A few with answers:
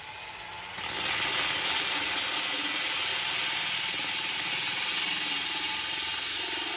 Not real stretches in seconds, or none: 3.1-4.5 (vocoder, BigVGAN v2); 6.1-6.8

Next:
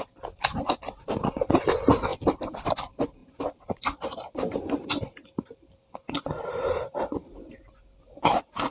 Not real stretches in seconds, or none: 0.0-8.7 (vocoder, BigVGAN v2)

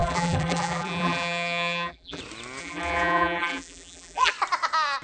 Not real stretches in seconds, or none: 0.0-2.2 (vocoder, BigVGAN v2); 2.6-4.3